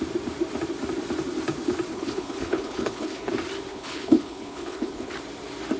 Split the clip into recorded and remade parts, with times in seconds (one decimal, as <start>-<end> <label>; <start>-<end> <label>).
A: 0.0-1.9 recorded; 1.9-3.3 remade; 3.3-3.7 recorded; 3.7-5.1 remade; 5.1-5.8 recorded